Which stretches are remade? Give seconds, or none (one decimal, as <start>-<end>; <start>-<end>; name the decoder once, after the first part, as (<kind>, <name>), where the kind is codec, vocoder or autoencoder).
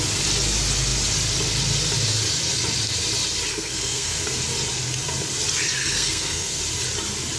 3.5-4.2 (codec, SNAC); 5.8-6.6